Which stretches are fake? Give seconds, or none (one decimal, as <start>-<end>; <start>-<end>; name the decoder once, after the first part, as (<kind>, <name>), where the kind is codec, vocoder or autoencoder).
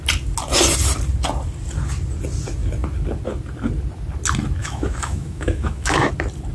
4.6-6.1 (autoencoder, DAC-VAE)